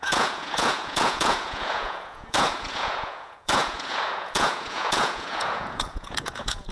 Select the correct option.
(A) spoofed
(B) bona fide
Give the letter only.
A